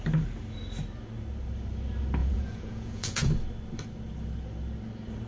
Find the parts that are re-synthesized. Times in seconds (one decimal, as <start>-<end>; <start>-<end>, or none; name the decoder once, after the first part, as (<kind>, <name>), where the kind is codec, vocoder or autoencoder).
2.2-3.3 (vocoder, Vocos)